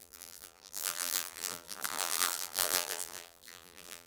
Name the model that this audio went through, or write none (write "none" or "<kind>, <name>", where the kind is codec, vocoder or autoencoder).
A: vocoder, BigVGAN v2